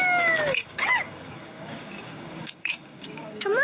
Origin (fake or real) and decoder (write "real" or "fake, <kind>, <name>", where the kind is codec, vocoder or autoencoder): fake, codec, DAC